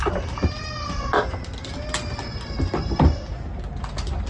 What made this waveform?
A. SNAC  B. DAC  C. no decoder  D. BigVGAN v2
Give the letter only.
C